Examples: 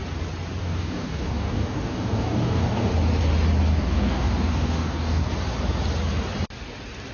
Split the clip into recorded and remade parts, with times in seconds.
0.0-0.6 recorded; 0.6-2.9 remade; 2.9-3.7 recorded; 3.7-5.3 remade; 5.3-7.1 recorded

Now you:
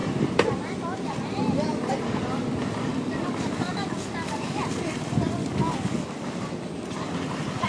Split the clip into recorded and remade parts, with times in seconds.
0.0-2.9 recorded; 2.9-4.6 remade; 4.6-5.4 recorded; 5.4-6.5 remade; 6.5-7.7 recorded

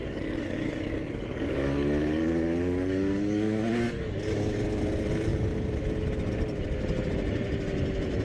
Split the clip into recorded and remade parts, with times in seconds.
0.0-4.8 remade; 4.8-8.2 recorded